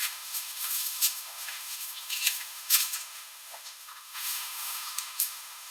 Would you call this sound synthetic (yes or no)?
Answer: yes